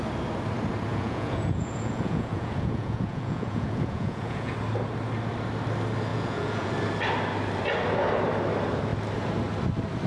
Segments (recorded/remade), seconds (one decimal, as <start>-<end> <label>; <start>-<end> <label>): 0.0-0.9 recorded; 0.9-4.5 remade; 4.5-6.1 recorded; 6.1-6.7 remade; 6.7-10.1 recorded